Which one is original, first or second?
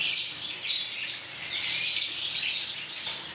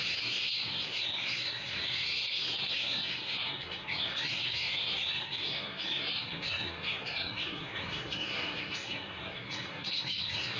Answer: first